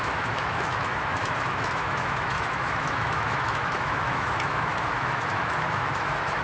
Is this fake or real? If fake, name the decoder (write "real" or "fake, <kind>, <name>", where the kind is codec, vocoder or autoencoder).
fake, autoencoder, DAC-VAE